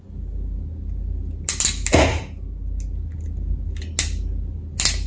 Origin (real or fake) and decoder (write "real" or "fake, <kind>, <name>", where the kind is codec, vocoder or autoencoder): real